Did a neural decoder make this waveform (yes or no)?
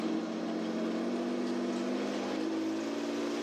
no